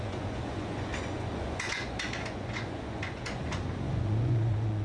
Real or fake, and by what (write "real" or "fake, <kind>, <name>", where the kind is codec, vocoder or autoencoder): fake, vocoder, Vocos